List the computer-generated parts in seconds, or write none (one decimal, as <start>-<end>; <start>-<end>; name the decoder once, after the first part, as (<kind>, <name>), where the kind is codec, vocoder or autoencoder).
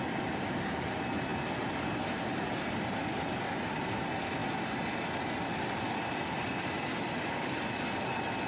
none